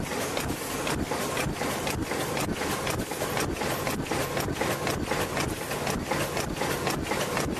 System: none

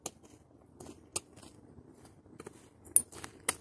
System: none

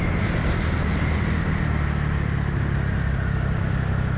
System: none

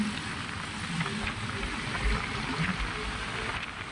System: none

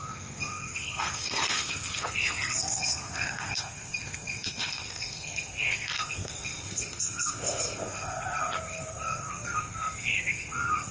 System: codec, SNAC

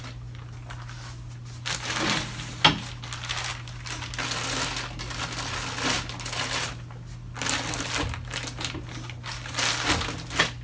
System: none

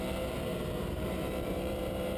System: vocoder, BigVGAN v2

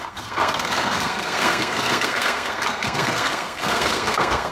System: codec, SNAC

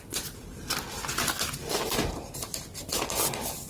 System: none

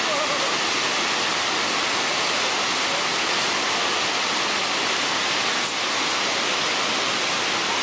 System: none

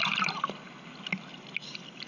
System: none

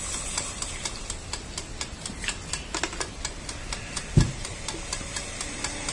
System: none